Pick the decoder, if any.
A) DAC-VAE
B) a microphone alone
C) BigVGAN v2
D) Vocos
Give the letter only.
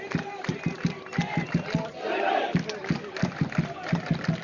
C